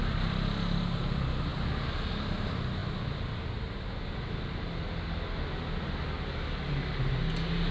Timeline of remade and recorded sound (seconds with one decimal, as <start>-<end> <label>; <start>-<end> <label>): 0.0-7.7 recorded